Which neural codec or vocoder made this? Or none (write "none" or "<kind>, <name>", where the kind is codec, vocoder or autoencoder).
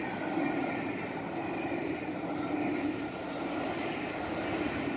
none